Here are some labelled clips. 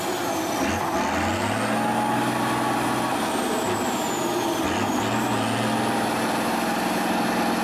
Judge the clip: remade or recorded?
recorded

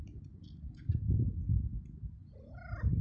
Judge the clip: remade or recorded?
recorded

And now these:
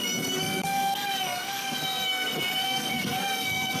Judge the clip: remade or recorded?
remade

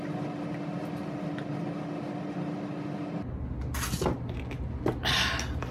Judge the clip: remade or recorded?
recorded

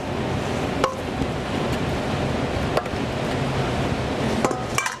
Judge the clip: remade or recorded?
recorded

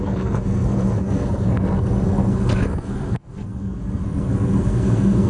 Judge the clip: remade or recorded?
remade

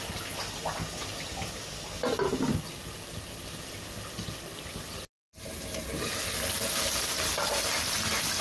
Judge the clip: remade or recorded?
recorded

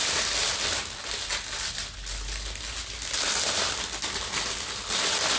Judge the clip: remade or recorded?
recorded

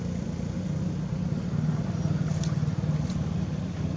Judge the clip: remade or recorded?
recorded